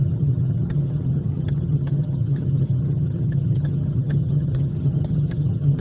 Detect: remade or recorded remade